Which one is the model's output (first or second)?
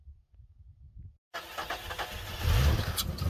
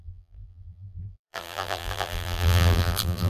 second